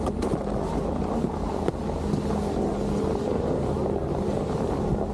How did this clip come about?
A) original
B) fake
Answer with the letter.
A